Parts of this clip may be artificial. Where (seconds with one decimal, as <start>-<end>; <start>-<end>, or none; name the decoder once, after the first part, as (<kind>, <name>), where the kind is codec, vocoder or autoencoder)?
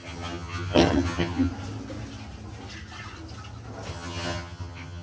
0.0-1.5 (vocoder, HiFi-GAN); 3.9-5.0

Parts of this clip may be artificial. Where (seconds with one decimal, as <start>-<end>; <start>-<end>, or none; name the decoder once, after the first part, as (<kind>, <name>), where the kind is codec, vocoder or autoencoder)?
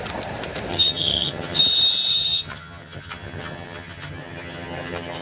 0.7-1.6 (vocoder, HiFi-GAN); 2.1-5.2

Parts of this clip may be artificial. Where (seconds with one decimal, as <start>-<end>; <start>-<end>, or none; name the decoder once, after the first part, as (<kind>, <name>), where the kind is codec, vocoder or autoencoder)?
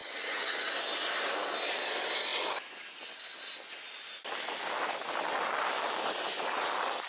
0.0-0.7 (vocoder, HiFi-GAN)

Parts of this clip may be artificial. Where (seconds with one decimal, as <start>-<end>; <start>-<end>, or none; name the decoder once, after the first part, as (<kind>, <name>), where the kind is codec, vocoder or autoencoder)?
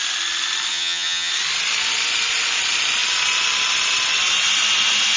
0.7-1.3 (vocoder, HiFi-GAN)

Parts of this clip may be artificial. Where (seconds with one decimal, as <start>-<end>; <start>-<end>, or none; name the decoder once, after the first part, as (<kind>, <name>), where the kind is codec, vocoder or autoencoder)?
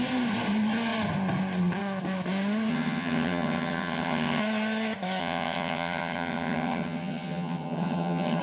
2.7-4.4 (vocoder, HiFi-GAN); 5.2-8.4